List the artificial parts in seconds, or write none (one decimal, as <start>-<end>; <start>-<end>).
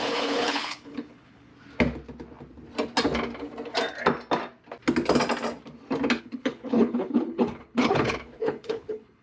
0.0-1.5; 6.2-9.2